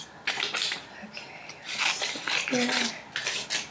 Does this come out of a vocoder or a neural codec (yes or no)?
no